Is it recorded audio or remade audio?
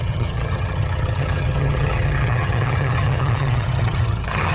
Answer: remade